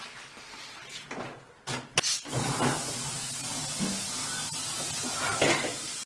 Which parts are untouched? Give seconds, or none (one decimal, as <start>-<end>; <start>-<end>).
0.0-6.1